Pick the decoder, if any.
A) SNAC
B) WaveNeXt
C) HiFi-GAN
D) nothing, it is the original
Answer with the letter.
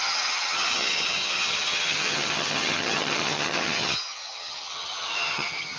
C